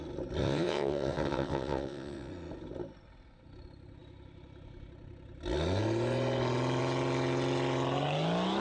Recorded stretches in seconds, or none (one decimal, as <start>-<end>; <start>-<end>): 0.0-0.4; 2.3-8.6